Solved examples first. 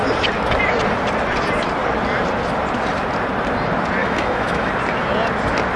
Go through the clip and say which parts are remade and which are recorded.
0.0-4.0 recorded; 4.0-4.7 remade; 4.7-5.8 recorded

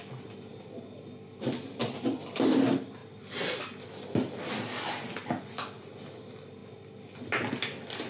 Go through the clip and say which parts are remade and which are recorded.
0.0-8.1 recorded